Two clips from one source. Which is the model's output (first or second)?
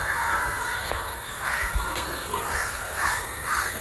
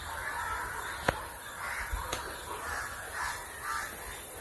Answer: first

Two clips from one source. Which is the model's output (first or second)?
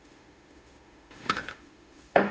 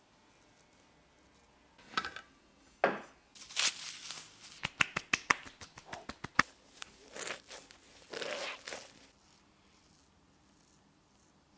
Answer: first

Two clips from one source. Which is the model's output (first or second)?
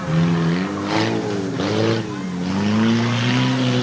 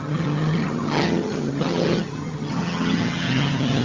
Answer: second